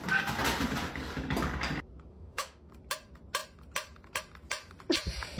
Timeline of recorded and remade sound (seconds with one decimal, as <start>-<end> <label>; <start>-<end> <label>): 0.0-2.1 recorded; 2.1-2.7 remade; 2.7-5.4 recorded